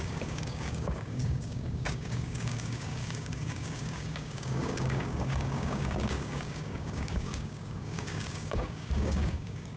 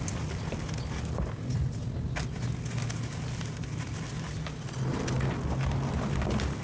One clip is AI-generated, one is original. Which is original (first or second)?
second